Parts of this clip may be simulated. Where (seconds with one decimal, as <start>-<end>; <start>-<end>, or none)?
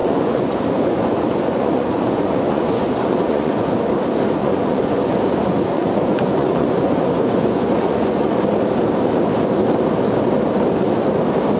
0.0-3.7; 4.4-8.4